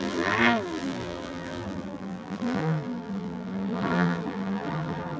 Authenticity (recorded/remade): remade